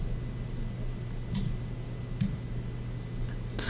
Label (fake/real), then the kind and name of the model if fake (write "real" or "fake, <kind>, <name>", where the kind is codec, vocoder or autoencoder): real